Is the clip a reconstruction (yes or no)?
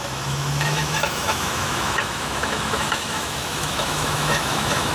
yes